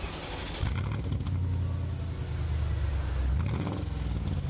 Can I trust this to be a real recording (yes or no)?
yes